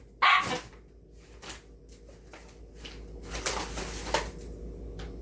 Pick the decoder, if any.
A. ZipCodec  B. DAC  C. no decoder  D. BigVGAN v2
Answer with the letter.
C